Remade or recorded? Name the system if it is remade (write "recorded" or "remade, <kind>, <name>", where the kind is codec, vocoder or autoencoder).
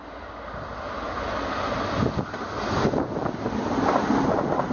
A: recorded